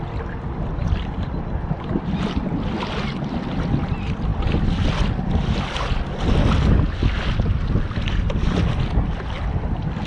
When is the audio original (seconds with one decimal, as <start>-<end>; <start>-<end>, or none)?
0.0-10.1